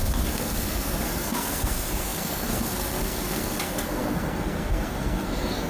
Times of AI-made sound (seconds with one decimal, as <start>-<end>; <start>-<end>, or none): 0.0-5.7